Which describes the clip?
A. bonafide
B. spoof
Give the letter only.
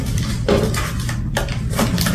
A